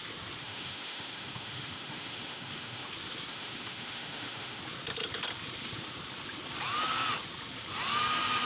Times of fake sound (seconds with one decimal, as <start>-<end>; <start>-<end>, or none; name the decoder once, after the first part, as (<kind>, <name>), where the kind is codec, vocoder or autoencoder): 0.4-2.9 (autoencoder, DAC-VAE); 3.3-4.6